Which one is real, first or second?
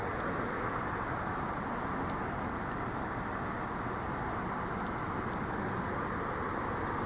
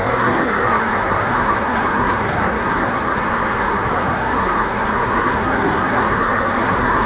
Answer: first